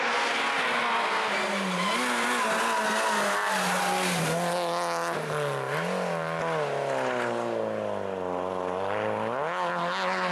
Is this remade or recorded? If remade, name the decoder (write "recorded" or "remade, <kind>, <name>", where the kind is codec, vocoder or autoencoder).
recorded